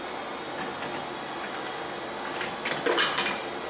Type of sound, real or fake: real